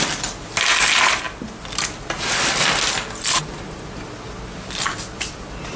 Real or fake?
real